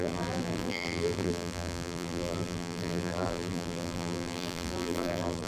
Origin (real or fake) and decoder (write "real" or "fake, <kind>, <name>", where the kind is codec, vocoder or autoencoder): fake, vocoder, BigVGAN v2